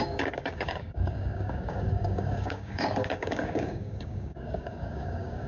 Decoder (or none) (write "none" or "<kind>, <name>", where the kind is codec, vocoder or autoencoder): codec, DAC